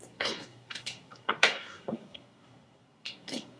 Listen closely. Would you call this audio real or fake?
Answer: fake